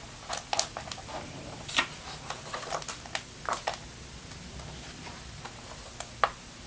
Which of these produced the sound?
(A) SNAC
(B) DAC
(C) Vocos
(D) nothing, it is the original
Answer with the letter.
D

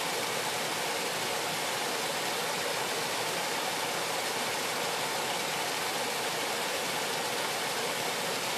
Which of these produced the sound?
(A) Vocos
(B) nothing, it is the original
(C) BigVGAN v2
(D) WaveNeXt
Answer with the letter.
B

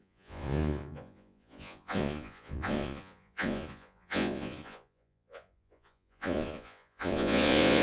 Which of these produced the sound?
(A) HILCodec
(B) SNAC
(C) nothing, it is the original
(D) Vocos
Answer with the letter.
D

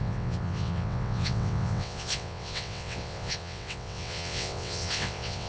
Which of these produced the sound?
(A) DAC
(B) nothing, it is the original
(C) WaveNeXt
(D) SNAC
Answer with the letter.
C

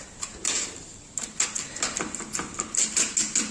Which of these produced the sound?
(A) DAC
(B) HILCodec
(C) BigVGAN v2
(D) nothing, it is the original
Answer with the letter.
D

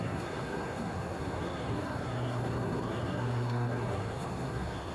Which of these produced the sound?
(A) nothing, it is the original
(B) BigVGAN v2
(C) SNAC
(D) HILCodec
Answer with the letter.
C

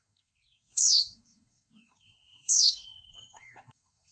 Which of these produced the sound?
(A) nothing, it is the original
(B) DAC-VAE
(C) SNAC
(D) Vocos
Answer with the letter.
C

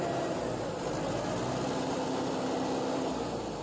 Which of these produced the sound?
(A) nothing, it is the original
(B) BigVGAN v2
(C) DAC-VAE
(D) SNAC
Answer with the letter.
A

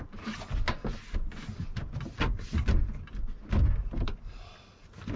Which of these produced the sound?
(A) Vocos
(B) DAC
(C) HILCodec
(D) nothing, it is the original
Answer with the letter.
D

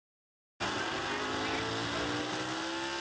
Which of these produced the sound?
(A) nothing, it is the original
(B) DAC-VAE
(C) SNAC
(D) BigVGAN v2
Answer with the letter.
A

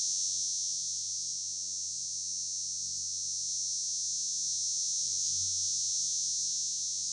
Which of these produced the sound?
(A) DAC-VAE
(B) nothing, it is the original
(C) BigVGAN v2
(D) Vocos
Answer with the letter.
D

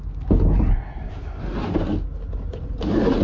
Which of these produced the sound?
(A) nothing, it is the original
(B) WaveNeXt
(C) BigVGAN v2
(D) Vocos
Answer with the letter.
A